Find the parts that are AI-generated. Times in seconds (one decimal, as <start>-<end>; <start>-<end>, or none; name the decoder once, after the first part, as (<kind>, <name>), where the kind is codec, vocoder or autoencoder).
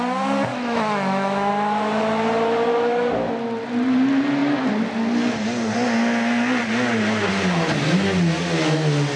0.5-1.5 (autoencoder, DAC-VAE)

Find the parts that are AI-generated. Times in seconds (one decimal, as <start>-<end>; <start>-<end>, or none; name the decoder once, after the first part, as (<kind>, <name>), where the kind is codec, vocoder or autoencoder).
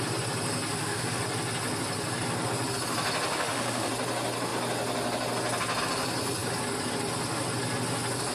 0.7-1.2 (autoencoder, DAC-VAE); 3.3-3.9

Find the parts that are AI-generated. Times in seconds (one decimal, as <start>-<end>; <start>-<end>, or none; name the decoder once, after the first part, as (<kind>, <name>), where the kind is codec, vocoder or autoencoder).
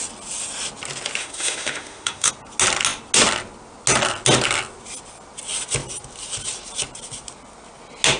1.2-2.3 (autoencoder, DAC-VAE)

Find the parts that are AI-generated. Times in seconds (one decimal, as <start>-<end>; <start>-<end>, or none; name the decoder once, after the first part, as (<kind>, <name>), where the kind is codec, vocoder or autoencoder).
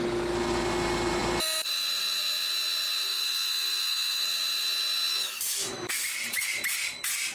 3.1-4.2 (autoencoder, DAC-VAE); 5.1-5.9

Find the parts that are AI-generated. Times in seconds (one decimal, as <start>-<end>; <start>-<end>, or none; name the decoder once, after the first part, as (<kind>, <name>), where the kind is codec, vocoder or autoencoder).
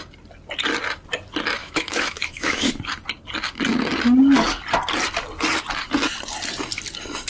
1.6-2.7 (autoencoder, DAC-VAE)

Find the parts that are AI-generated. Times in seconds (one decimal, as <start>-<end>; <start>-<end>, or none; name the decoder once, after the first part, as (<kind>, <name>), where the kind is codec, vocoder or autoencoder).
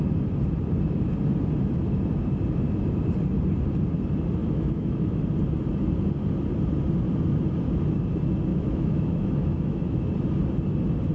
4.4-5.2 (autoencoder, DAC-VAE); 8.5-10.1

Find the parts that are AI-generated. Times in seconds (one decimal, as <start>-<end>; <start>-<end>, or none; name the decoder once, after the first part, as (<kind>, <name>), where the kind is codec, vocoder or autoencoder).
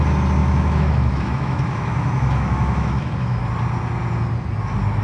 0.4-3.4 (autoencoder, DAC-VAE)